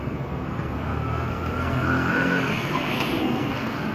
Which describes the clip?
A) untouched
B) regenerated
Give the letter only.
B